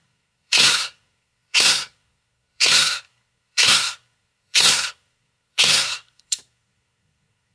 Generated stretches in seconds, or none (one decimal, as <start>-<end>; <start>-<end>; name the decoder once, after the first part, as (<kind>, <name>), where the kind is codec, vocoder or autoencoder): 0.0-7.5 (codec, SNAC)